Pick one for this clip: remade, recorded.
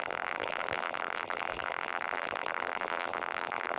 remade